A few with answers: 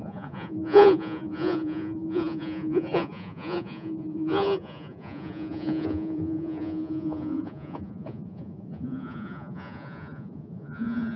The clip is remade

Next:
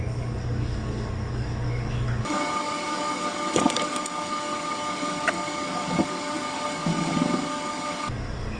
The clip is remade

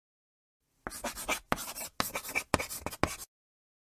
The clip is recorded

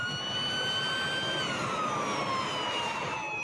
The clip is recorded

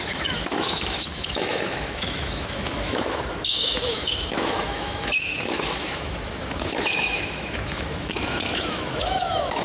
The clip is remade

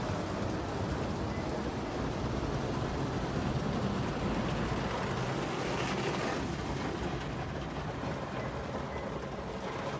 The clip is recorded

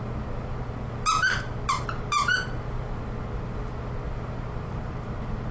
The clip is recorded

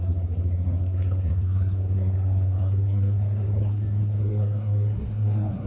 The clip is remade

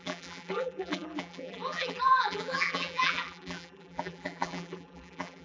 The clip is remade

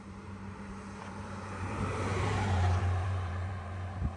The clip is remade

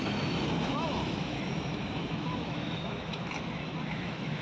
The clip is remade